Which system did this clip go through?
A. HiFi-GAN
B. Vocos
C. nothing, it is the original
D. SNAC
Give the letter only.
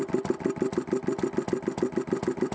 C